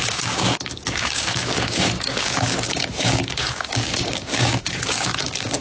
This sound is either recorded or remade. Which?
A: remade